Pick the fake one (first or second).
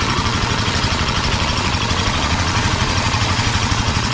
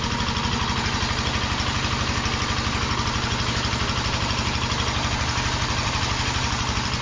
first